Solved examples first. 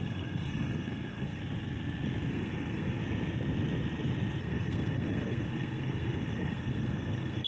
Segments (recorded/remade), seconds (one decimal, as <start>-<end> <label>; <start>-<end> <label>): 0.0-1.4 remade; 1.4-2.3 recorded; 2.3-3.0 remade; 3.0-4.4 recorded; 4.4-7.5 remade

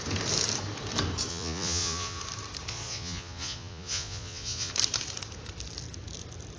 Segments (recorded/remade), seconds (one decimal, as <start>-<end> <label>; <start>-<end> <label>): 0.0-1.3 recorded; 1.3-2.2 remade; 2.2-2.7 recorded; 2.7-4.7 remade; 4.7-6.6 recorded

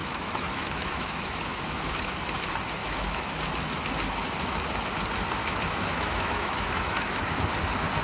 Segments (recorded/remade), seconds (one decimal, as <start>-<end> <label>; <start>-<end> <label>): 0.0-2.1 remade; 2.1-2.8 recorded; 2.8-3.3 remade; 3.3-5.4 recorded; 5.4-7.2 remade; 7.2-8.0 recorded

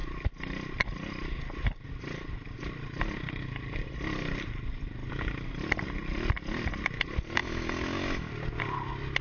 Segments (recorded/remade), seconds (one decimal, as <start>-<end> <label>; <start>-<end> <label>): 0.0-7.4 recorded; 7.4-8.3 remade; 8.3-9.2 recorded

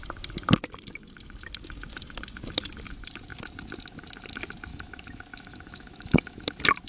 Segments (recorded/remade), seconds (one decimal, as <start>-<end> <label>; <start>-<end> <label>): 0.0-4.7 recorded; 4.7-6.4 remade; 6.4-6.9 recorded